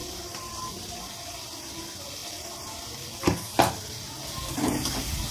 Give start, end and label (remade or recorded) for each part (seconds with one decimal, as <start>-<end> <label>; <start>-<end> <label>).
0.0-5.3 recorded